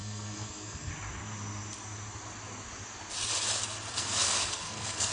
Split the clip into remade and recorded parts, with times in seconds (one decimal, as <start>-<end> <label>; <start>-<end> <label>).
0.0-0.9 remade; 0.9-3.9 recorded; 3.9-5.1 remade